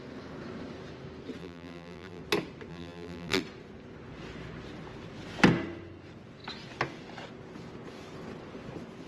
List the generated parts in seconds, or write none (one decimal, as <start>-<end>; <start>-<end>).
1.4-2.2; 2.7-3.4